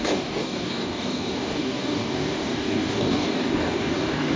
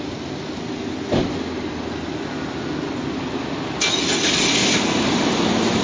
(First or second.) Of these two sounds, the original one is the second